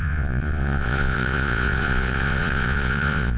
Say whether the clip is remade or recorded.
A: remade